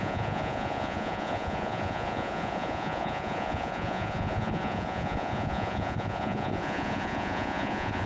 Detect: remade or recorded remade